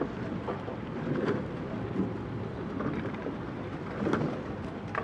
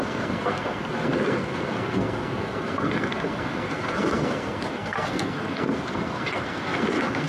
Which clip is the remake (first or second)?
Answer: second